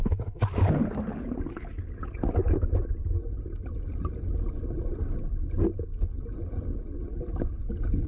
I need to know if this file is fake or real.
real